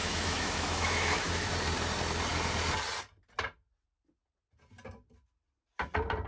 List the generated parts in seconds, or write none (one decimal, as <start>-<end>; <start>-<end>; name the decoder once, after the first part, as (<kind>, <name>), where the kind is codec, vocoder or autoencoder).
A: 0.0-1.5 (autoencoder, DAC-VAE)